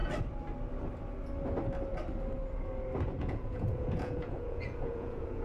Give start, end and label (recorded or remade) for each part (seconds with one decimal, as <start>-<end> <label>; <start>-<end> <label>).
0.0-3.2 recorded; 3.2-5.4 remade